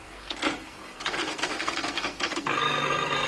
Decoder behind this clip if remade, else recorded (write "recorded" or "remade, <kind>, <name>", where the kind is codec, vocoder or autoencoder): remade, codec, SNAC